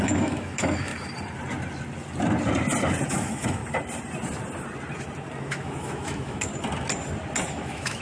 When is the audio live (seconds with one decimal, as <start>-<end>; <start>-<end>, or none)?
0.9-3.1; 3.6-5.4; 6.5-7.5

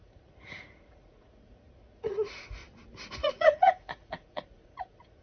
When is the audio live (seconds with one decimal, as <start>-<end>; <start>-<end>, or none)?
2.6-3.1

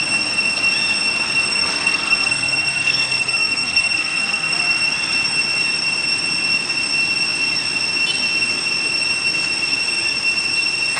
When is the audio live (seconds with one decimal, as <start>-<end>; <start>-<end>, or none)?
0.0-1.5; 4.6-11.0

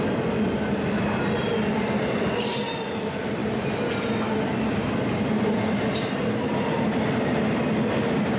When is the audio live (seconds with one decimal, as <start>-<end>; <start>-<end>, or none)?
0.0-8.4

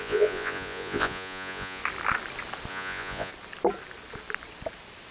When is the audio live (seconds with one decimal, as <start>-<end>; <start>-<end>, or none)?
1.8-2.7; 3.3-5.1

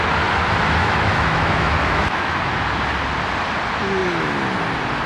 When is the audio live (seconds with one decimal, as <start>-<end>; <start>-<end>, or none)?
0.0-0.8; 2.4-5.1